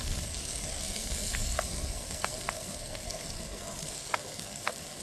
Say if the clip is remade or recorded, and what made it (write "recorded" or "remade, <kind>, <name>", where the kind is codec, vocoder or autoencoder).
remade, codec, SNAC